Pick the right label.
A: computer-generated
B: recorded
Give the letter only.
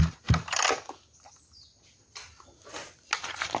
B